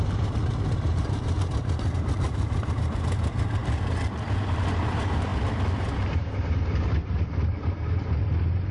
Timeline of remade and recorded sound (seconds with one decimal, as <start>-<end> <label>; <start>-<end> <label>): 0.0-3.6 remade; 3.6-4.7 recorded; 4.7-5.3 remade; 5.3-5.8 recorded; 5.8-8.7 remade